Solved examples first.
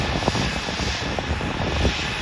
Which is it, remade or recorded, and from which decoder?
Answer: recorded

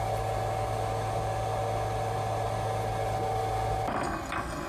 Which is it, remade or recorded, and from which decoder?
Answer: recorded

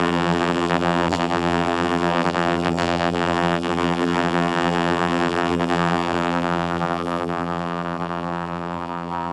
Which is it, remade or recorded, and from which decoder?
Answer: remade, vocoder, BigVGAN v2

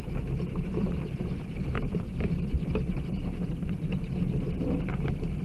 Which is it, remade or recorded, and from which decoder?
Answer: recorded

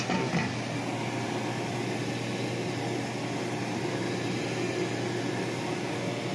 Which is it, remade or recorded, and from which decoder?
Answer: recorded